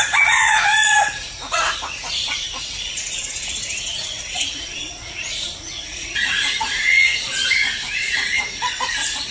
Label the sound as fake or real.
fake